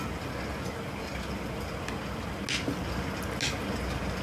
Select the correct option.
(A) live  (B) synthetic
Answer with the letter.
A